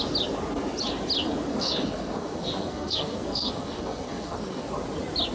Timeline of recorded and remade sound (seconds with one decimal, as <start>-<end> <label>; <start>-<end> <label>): 0.0-1.5 recorded; 1.5-4.7 remade; 4.7-5.3 recorded